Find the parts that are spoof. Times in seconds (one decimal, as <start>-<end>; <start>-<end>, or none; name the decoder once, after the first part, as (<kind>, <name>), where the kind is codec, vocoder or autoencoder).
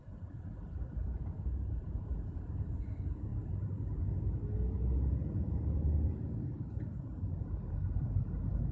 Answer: none